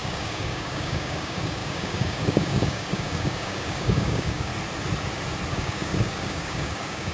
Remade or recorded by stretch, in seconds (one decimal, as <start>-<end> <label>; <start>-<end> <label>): 0.0-4.5 remade; 4.5-5.5 recorded; 5.5-7.1 remade